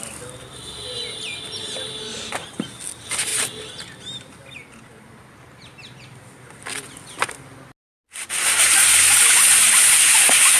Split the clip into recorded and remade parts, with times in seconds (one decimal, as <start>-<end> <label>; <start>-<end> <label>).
0.0-10.6 recorded